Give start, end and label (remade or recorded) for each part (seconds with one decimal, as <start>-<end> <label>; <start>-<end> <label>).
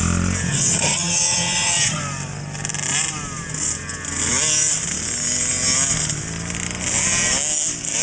0.0-0.5 recorded; 0.5-2.0 remade; 2.0-8.0 recorded